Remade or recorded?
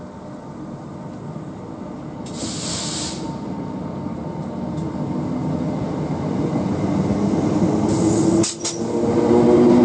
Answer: recorded